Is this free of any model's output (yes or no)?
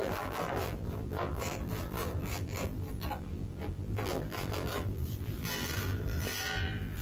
no